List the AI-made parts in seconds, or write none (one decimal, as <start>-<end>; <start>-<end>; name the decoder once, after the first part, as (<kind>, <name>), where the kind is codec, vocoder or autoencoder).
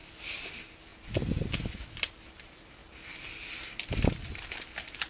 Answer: none